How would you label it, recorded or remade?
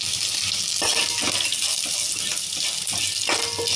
recorded